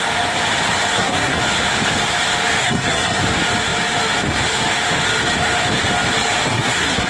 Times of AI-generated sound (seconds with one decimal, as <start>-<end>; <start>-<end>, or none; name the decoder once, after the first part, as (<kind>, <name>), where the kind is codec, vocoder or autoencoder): 0.9-1.4 (codec, SNAC); 2.6-3.2; 6.5-7.1